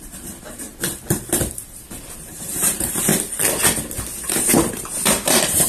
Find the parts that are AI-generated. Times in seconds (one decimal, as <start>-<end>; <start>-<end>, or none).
0.0-0.7; 1.5-3.1; 4.2-5.7